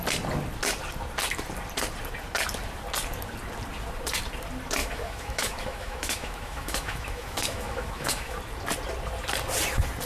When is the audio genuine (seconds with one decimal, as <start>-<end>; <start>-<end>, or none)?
0.0-4.8; 8.4-10.0